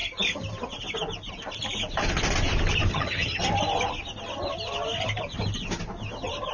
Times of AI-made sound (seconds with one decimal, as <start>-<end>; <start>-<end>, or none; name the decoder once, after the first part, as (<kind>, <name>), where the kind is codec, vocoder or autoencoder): 2.9-3.4 (vocoder, HiFi-GAN)